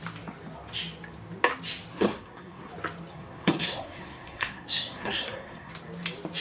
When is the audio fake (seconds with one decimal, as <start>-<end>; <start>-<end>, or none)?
1.9-2.7; 3.1-5.7